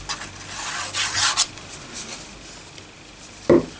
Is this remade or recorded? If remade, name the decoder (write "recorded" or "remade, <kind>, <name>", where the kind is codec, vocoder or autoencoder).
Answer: recorded